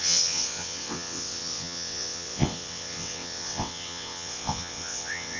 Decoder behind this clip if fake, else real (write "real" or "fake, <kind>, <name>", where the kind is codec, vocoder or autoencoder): fake, vocoder, WaveNeXt